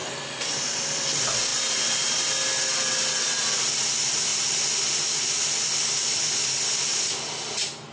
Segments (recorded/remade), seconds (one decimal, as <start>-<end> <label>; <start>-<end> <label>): 0.0-7.9 recorded